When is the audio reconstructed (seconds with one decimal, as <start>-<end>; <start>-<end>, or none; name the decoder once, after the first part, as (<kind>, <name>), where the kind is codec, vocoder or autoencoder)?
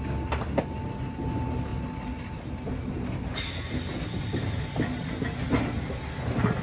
none